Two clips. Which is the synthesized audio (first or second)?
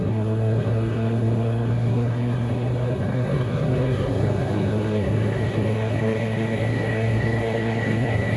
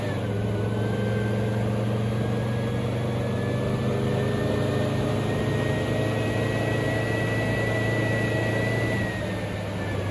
first